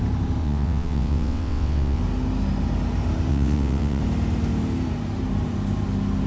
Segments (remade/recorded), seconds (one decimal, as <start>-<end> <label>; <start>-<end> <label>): 0.0-0.4 recorded; 0.4-2.0 remade; 2.0-3.3 recorded; 3.3-4.0 remade; 4.0-6.3 recorded